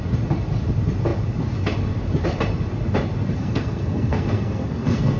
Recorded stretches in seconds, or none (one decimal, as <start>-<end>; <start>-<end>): 0.0-3.4